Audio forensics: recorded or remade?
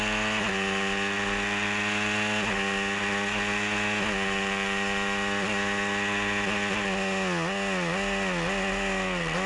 recorded